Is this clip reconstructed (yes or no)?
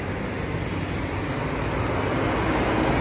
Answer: no